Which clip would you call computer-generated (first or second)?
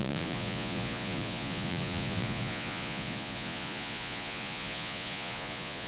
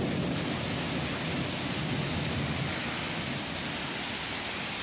first